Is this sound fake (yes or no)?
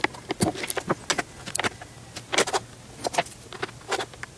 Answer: no